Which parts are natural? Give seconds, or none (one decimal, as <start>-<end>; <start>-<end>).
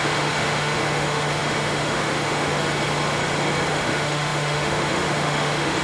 2.6-3.7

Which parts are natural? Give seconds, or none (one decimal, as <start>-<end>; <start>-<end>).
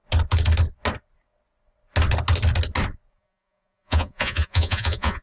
0.0-3.1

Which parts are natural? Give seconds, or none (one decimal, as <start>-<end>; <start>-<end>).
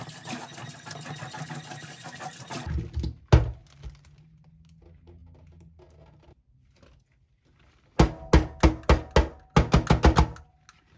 0.0-11.0